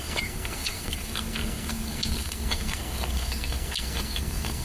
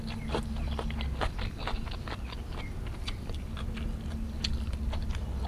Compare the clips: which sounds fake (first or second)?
first